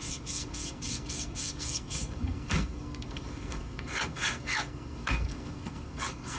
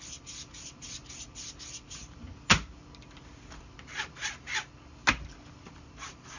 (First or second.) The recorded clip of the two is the second